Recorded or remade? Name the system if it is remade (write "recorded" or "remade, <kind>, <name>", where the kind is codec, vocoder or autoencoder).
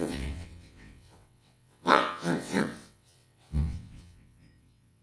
remade, vocoder, WaveNeXt